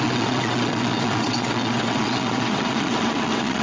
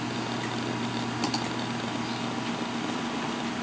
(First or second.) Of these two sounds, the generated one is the first